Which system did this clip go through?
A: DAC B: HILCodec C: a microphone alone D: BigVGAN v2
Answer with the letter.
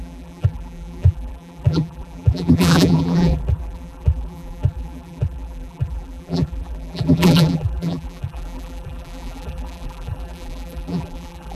D